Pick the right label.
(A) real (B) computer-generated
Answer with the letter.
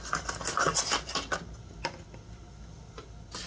A